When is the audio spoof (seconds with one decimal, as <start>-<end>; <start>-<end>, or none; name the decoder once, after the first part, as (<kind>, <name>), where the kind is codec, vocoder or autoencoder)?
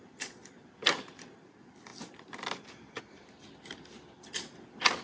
0.0-5.0 (vocoder, BigVGAN v2)